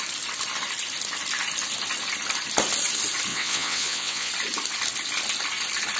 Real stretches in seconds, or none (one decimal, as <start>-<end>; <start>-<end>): 0.0-3.3; 4.3-6.0